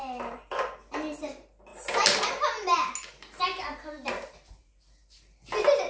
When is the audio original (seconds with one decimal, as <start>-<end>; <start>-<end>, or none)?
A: 0.0-5.9